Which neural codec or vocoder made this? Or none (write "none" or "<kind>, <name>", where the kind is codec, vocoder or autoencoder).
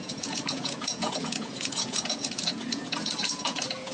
vocoder, Vocos